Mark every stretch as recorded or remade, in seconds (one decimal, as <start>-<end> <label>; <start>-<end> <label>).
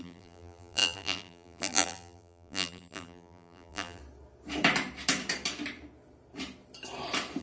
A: 0.0-4.0 remade; 4.0-7.4 recorded